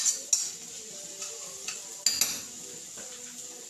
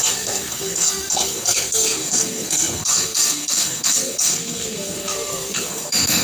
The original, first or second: first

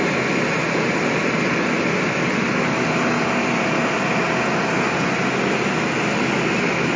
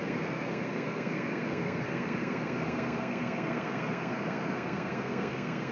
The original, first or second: first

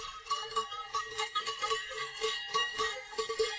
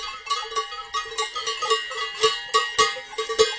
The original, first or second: second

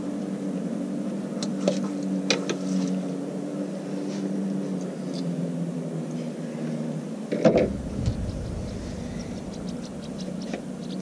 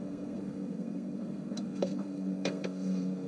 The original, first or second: first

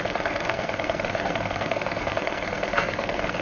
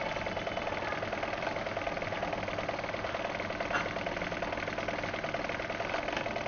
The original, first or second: second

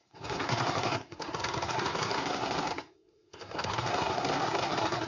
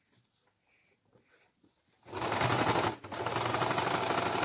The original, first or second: second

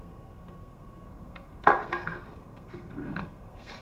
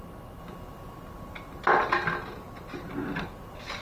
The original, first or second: second